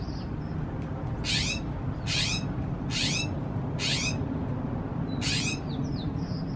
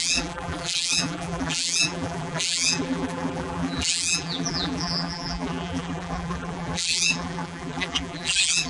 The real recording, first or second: first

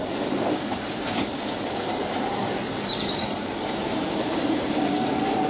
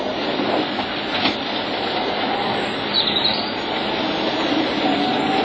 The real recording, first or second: second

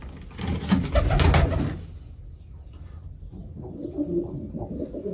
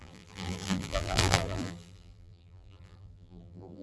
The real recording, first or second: first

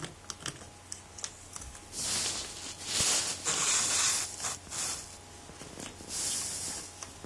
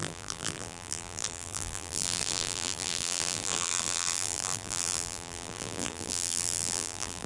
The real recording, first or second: first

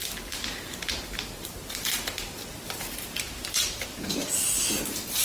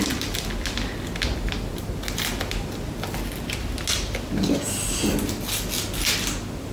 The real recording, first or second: second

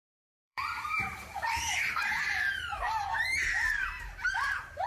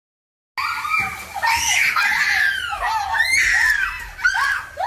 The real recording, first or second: second